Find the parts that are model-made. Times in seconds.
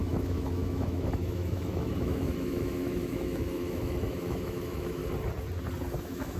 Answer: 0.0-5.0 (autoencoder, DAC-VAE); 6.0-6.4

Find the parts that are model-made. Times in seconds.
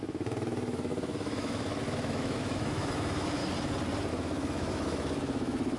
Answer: 0.0-3.4 (autoencoder, DAC-VAE); 4.1-5.8